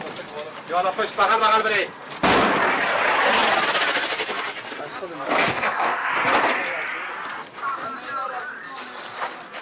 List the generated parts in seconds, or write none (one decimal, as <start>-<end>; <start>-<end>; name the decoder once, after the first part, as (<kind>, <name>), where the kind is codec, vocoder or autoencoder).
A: 5.5-6.1 (codec, ZipCodec)